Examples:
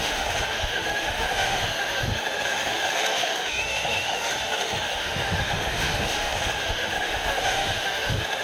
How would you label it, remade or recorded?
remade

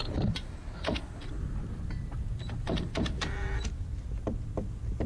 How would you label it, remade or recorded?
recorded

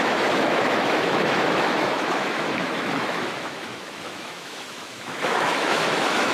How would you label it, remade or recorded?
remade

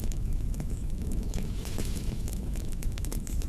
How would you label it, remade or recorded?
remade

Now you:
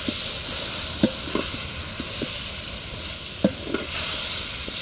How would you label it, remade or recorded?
recorded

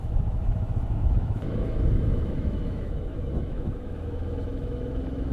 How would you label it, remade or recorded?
remade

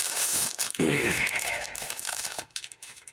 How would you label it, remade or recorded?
remade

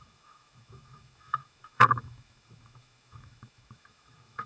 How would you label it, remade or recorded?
remade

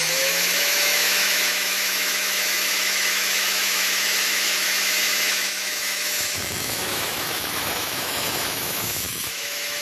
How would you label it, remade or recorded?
remade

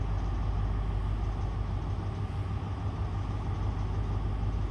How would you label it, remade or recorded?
recorded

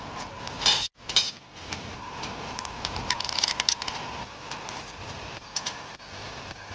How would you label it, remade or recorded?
recorded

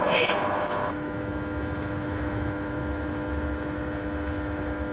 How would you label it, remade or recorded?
remade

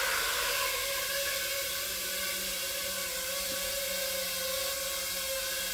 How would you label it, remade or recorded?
recorded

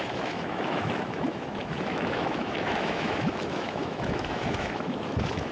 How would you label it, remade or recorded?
remade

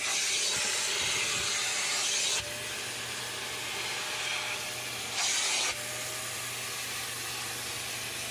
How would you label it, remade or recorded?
recorded